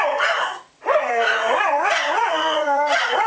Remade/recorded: remade